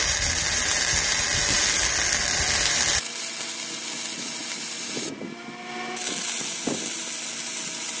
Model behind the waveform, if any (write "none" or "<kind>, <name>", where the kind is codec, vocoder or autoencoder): none